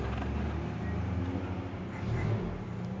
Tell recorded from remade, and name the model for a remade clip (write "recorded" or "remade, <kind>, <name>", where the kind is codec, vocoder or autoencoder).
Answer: recorded